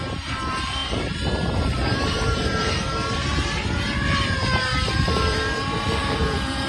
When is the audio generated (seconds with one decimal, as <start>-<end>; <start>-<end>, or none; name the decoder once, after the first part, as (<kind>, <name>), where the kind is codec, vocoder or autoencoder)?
0.0-6.7 (vocoder, BigVGAN v2)